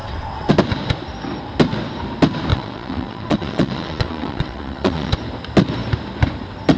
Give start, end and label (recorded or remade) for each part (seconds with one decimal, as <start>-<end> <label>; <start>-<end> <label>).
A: 0.0-0.5 remade; 0.5-2.5 recorded; 2.5-5.1 remade; 5.1-6.8 recorded